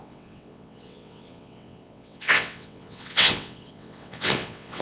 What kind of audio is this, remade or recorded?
remade